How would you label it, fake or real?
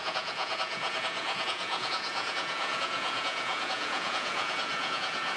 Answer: fake